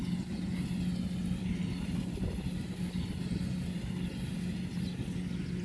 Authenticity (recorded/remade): recorded